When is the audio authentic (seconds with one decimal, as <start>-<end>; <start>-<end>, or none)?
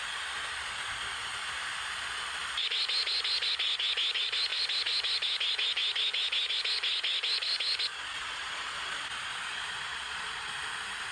0.0-7.9; 10.5-11.1